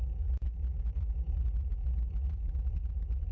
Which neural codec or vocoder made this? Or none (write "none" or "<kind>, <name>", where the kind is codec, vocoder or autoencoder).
vocoder, Vocos